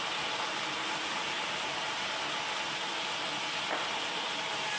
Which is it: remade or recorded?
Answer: recorded